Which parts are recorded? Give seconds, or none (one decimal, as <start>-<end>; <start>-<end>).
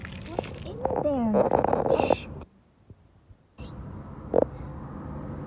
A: 0.0-5.5